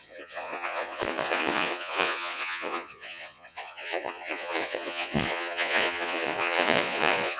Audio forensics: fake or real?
fake